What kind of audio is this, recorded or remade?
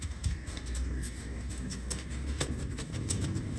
remade